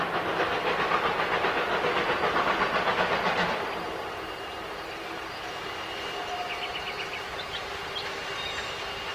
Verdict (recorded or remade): recorded